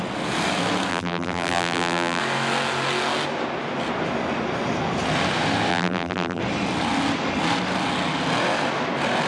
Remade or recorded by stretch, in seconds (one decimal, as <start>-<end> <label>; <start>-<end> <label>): 0.0-0.9 recorded; 0.9-2.2 remade; 2.2-5.7 recorded; 5.7-6.4 remade; 6.4-9.3 recorded